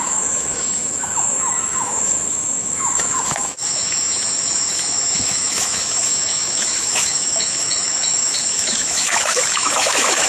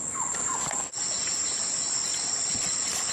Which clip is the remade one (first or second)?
first